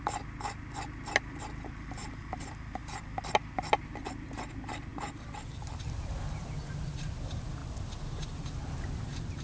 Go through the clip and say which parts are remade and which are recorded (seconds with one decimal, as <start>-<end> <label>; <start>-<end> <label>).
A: 0.0-9.4 recorded